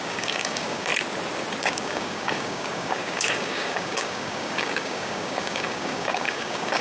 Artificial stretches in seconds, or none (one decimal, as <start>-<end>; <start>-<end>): 0.0-0.9; 1.6-6.8